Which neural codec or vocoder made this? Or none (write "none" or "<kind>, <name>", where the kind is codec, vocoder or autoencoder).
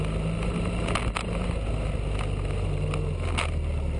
none